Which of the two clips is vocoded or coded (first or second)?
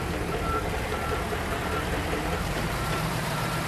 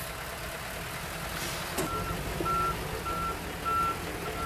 first